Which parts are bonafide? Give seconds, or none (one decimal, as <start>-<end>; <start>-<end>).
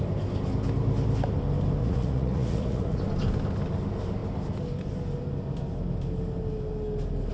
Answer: 0.0-1.8; 3.0-7.3